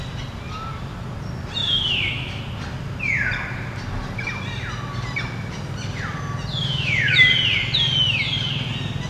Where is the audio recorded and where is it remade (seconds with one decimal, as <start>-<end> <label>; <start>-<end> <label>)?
0.0-1.6 recorded; 1.6-2.4 remade; 2.4-6.6 recorded; 6.6-7.3 remade; 7.3-9.1 recorded